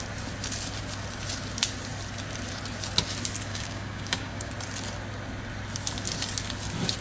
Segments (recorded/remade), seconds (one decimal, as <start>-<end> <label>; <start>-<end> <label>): 0.0-3.5 recorded; 3.5-4.5 remade; 4.5-7.0 recorded